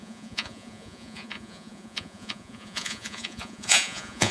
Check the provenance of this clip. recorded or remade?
remade